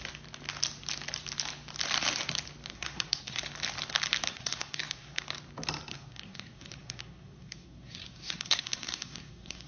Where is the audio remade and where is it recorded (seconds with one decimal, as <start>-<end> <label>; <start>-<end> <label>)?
0.0-2.7 recorded; 2.7-3.4 remade; 3.4-4.3 recorded; 4.3-5.2 remade; 5.2-5.9 recorded; 5.9-9.7 remade